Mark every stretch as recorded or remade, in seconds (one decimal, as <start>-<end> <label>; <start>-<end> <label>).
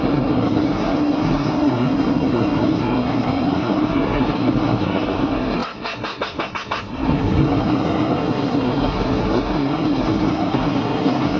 0.0-11.4 remade